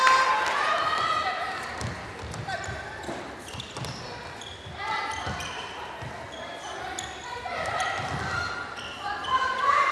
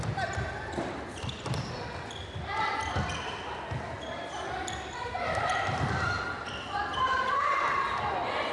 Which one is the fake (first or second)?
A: second